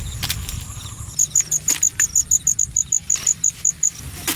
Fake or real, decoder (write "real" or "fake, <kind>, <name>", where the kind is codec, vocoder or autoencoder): real